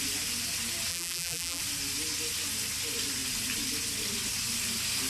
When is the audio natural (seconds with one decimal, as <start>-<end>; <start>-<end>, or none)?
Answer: 0.0-0.9; 1.6-5.1